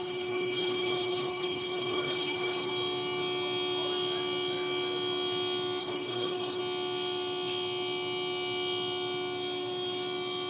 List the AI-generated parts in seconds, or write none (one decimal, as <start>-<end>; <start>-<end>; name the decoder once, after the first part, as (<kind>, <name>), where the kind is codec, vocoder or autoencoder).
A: 0.0-2.7 (codec, HILCodec); 5.8-6.6